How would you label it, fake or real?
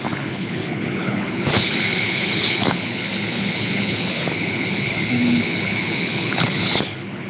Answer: fake